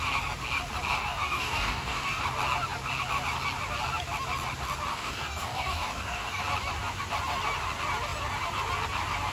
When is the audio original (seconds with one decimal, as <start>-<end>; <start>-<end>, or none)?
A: 0.0-1.0; 2.2-4.9; 6.4-9.3